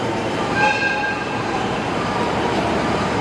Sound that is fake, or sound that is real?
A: fake